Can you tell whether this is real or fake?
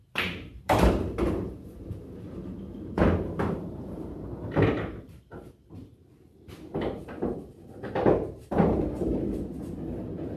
fake